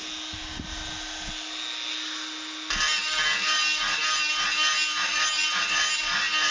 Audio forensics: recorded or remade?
recorded